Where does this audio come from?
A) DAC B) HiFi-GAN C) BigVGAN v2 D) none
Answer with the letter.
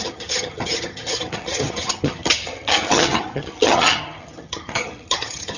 B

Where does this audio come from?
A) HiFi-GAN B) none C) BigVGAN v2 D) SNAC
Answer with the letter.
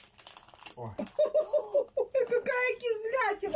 B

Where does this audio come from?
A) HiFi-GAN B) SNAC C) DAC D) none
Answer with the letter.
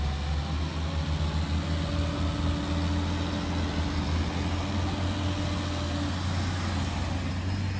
D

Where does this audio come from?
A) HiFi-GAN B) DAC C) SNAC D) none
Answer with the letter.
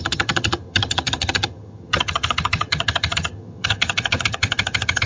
A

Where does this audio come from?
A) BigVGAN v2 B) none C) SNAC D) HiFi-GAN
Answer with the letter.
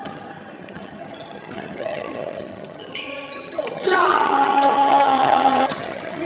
D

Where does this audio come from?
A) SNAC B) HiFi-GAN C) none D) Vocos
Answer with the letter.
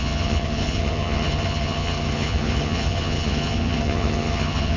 B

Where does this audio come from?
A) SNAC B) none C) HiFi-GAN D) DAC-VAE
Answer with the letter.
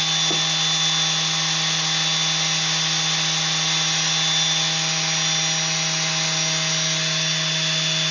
B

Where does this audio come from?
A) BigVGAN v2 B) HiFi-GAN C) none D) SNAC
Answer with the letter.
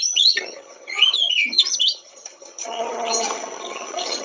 B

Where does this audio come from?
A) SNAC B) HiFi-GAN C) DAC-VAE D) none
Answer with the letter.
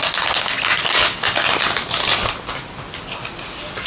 D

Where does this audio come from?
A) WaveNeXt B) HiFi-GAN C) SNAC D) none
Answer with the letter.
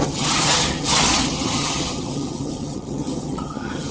B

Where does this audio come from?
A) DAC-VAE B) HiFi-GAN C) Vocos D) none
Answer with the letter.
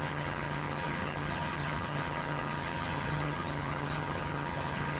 B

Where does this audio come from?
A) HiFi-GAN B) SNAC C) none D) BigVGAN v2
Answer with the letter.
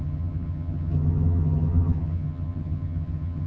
A